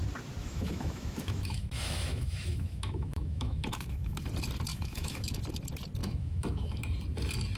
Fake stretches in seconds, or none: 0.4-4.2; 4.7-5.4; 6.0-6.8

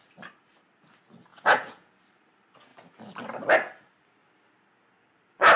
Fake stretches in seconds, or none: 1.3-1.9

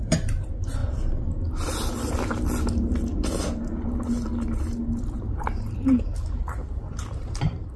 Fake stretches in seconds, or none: 0.0-0.8; 5.0-6.6; 7.2-7.8